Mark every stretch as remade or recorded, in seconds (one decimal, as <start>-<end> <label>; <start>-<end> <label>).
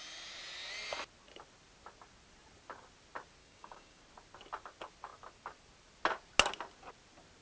0.0-3.4 recorded; 3.4-4.0 remade; 4.0-7.4 recorded